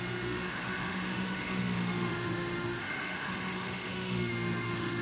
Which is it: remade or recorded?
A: remade